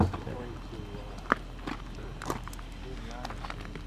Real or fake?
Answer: real